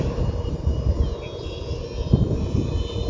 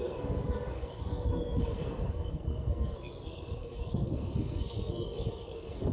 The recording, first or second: first